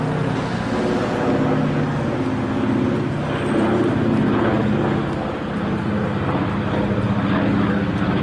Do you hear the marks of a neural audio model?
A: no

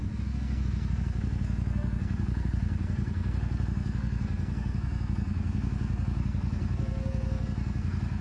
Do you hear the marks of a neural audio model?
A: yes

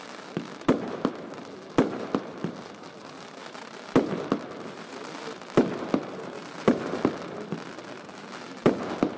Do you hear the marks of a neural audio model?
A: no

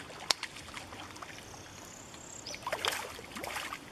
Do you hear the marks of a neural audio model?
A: no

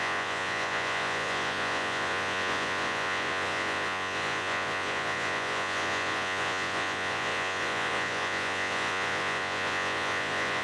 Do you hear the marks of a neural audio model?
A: yes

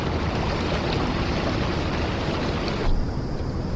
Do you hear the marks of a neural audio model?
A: no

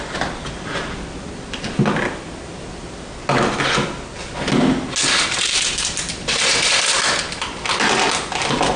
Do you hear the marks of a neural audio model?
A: no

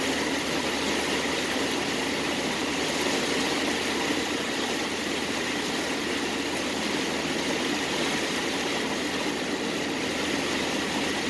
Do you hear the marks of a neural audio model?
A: no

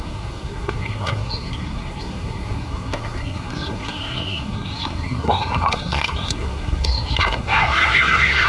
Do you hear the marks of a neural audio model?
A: yes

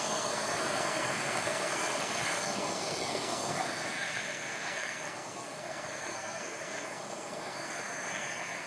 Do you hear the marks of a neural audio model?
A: yes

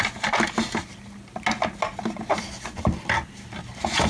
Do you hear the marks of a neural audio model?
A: no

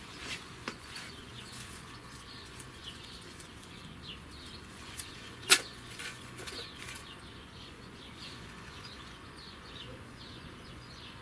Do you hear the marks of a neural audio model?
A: yes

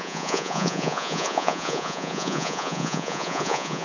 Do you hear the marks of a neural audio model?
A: yes